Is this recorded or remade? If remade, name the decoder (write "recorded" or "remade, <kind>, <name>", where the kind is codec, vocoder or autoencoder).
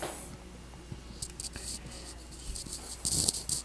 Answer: recorded